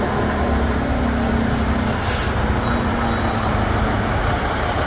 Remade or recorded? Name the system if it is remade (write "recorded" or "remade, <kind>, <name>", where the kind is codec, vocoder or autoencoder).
recorded